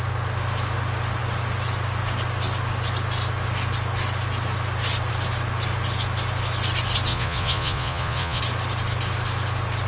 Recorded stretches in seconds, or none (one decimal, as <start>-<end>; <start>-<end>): 0.0-7.1; 8.4-9.9